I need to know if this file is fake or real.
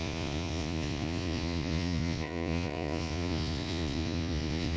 fake